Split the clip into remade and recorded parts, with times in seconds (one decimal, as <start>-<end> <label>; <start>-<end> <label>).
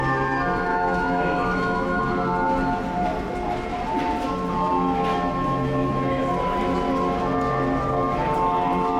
0.0-0.7 recorded; 0.7-2.0 remade; 2.0-5.1 recorded; 5.1-6.2 remade; 6.2-9.0 recorded